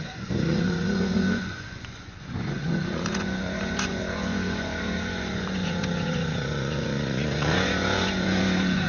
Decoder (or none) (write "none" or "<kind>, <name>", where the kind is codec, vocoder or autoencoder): vocoder, Vocos